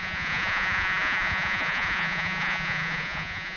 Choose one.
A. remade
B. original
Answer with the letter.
A